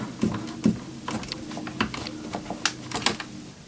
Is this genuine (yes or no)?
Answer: yes